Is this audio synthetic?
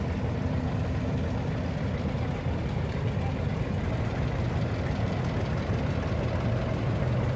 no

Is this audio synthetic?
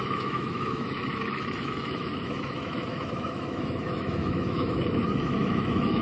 yes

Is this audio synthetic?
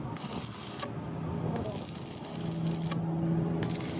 no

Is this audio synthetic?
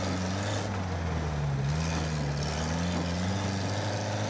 no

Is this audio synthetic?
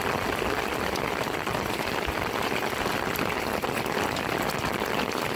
no